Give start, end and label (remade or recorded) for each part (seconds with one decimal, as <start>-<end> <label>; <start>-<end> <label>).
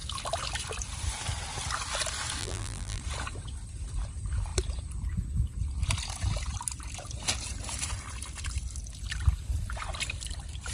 0.0-2.4 recorded; 2.4-3.0 remade; 3.0-10.7 recorded